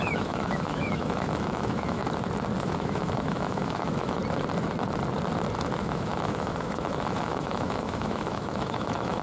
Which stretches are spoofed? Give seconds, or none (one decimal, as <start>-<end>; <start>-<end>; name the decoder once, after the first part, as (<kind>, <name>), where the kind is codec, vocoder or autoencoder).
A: 0.0-2.0 (autoencoder, DAC-VAE); 2.6-4.2; 5.8-9.2